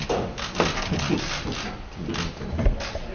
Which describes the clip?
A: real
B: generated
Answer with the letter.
A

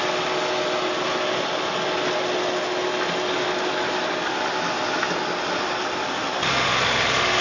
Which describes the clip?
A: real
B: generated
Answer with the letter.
A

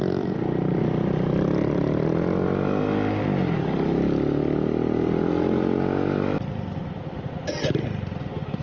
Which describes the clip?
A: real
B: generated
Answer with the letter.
A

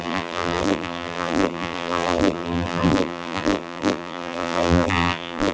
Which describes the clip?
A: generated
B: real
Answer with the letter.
A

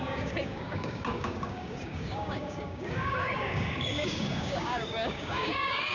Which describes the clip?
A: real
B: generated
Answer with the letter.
B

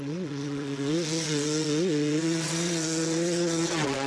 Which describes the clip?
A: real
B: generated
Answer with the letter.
B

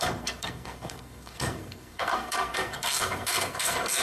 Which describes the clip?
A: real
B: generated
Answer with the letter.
B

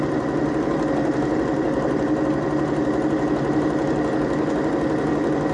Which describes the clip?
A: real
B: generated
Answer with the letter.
A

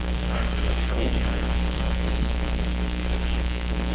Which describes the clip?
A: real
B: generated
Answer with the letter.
B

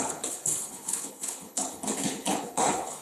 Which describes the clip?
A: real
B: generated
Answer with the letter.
B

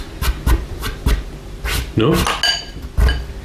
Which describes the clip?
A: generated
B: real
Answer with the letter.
B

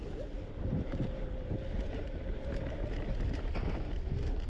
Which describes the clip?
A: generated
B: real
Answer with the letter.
B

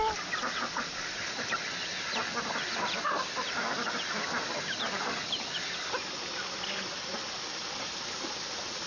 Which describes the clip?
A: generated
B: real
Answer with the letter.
B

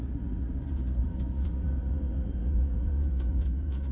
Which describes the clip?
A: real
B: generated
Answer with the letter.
B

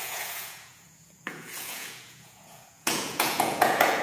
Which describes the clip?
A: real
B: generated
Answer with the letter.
B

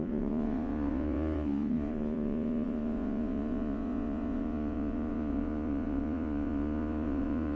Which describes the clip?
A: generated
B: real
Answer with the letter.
A